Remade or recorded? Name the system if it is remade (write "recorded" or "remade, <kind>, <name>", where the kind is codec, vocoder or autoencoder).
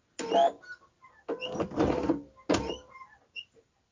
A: recorded